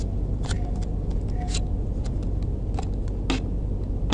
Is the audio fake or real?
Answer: real